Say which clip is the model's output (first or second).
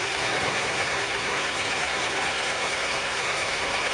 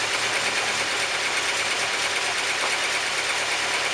first